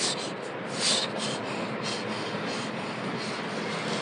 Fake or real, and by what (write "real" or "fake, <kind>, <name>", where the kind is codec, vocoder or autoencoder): real